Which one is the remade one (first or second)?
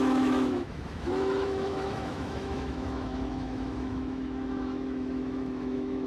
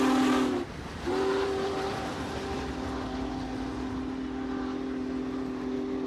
first